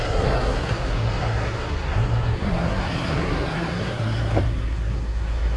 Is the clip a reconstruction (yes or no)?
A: yes